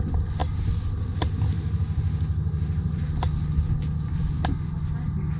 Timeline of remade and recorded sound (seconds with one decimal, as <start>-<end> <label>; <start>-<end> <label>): 0.0-5.4 recorded

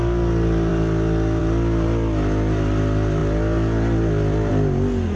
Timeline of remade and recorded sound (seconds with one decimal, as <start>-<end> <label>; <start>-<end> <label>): 0.0-5.2 recorded

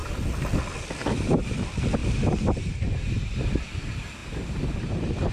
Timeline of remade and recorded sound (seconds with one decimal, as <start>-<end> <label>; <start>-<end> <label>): 0.0-1.0 recorded; 1.0-1.6 remade; 1.6-2.0 recorded; 2.0-3.6 remade; 3.6-4.2 recorded; 4.2-5.3 remade

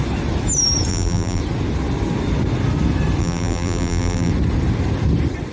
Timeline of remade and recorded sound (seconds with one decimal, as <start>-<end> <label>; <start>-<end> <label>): 0.0-0.9 recorded; 0.9-1.4 remade; 1.4-3.2 recorded; 3.2-4.3 remade; 4.3-5.5 recorded

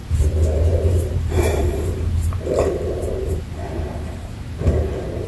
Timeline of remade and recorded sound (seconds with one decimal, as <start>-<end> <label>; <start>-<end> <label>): 0.0-3.2 remade; 3.2-3.6 recorded; 3.6-4.3 remade; 4.3-5.3 recorded

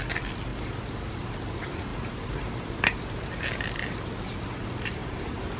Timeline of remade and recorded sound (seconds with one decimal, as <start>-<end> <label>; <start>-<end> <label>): 0.0-0.5 recorded; 0.5-1.3 remade; 1.3-1.9 recorded; 1.9-2.8 remade; 2.8-5.0 recorded; 5.0-5.6 remade

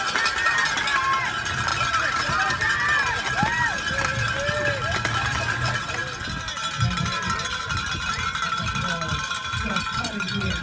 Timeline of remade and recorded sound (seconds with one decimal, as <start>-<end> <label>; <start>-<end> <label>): 0.0-10.6 recorded

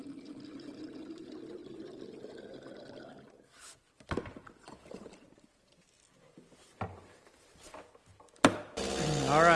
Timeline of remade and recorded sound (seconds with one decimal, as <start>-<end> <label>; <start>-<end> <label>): 0.0-1.6 recorded; 1.6-5.4 remade; 5.4-9.6 recorded